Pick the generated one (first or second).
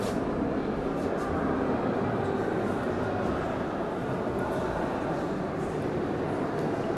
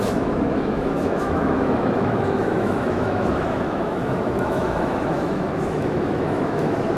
second